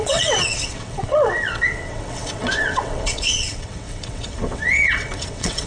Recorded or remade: remade